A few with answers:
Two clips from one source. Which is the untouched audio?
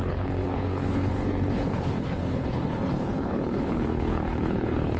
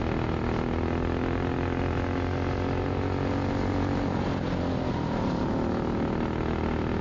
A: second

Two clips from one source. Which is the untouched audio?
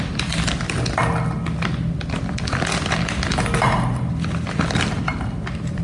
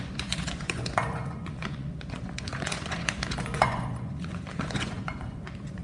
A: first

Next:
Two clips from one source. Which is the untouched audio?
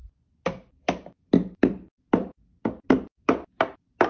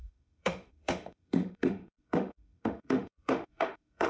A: first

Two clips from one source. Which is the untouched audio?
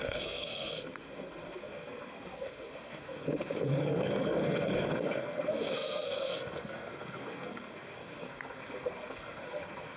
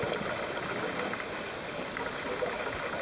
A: second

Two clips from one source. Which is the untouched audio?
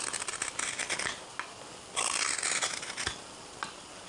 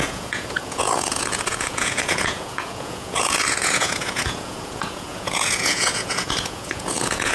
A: first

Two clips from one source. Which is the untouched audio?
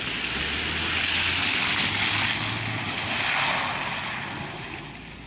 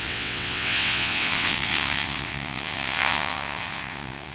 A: first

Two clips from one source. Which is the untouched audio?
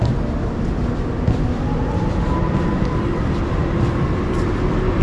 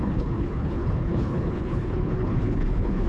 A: first